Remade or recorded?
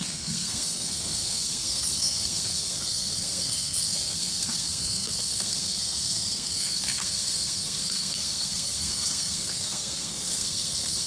remade